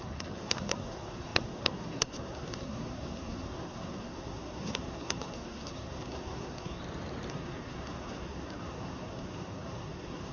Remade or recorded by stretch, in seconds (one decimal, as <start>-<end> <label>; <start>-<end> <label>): 0.0-6.8 remade; 6.8-7.3 recorded; 7.3-10.3 remade